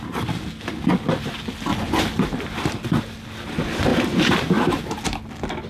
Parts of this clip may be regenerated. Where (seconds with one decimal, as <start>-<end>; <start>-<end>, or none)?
3.9-4.8